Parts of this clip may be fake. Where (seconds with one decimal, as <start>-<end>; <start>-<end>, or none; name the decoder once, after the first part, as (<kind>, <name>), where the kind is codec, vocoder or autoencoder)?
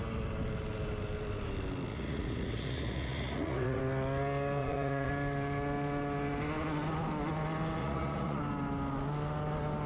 1.9-3.8 (vocoder, Vocos); 4.6-5.1; 7.8-8.4